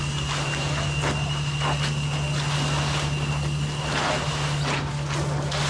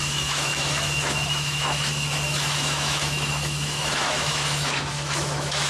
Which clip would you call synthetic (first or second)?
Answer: second